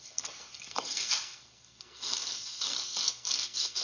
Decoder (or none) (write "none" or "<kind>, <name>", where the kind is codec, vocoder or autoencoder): codec, SNAC